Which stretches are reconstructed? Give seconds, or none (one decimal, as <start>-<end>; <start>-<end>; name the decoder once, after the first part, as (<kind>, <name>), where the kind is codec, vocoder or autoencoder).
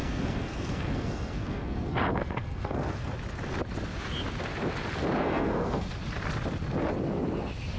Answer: 0.0-3.1 (codec, SNAC); 5.2-5.9